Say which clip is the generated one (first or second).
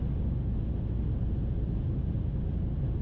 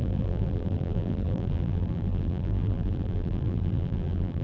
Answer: second